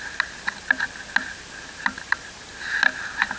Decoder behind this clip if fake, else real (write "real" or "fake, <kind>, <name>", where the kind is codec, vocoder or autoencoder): real